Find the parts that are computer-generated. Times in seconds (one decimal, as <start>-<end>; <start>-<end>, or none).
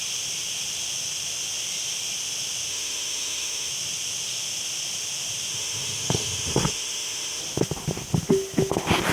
2.7-3.7; 5.5-7.4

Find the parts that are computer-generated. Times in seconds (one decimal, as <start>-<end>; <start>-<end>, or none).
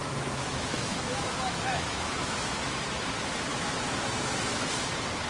0.0-3.0; 3.5-4.7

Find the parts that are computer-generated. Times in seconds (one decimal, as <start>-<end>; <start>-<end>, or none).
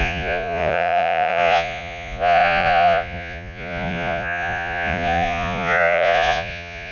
0.0-6.9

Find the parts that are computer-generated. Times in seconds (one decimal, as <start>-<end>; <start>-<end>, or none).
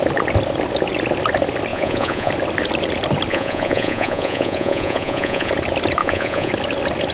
1.7-2.3; 3.3-5.5; 6.0-6.5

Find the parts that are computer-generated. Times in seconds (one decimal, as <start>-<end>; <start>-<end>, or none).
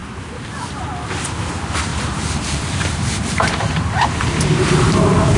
1.9-5.4